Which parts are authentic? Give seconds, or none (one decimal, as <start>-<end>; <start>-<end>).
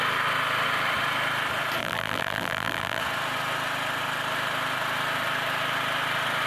0.0-1.8; 3.0-6.5